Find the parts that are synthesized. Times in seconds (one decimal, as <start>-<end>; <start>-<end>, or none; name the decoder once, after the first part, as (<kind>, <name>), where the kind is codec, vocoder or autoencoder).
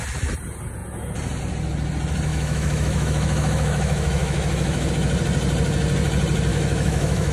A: 2.3-4.9 (autoencoder, DAC-VAE); 6.5-7.3